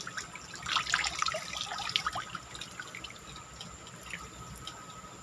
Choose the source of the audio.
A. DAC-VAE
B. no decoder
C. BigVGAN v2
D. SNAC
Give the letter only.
B